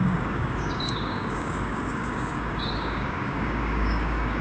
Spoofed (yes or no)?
yes